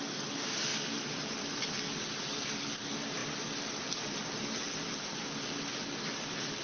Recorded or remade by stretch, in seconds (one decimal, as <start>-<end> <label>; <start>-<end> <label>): 0.0-6.6 recorded

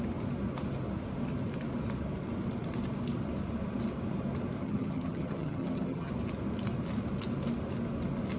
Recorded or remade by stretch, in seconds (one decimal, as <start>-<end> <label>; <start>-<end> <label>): 0.0-4.6 recorded; 4.6-6.1 remade; 6.1-8.4 recorded

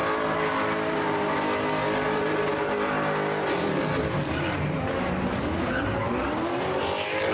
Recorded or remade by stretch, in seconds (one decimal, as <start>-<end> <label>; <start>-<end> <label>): 0.0-7.3 recorded

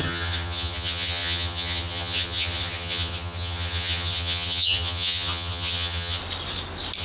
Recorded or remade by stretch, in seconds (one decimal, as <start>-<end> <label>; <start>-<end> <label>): 0.0-6.2 remade; 6.2-7.0 recorded